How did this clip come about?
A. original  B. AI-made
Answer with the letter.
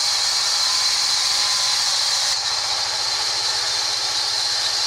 A